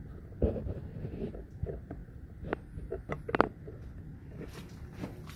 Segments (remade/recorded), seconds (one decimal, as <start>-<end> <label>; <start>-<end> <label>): 0.0-5.4 recorded